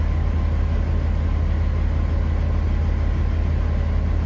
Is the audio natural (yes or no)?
yes